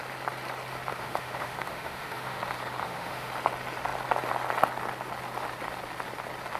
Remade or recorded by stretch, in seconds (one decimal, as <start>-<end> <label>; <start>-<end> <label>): 0.0-0.9 recorded; 0.9-2.4 remade; 2.4-2.8 recorded; 2.8-3.3 remade; 3.3-6.6 recorded